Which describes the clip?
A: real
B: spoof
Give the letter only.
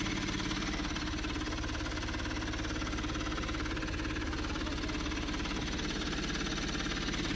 A